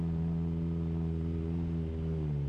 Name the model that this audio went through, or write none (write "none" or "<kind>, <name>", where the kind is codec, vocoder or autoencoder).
none